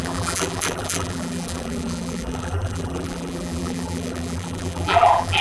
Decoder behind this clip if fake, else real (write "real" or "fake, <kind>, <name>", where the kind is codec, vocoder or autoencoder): fake, vocoder, BigVGAN v2